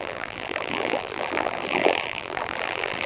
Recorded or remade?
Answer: remade